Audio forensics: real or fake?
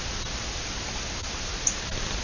real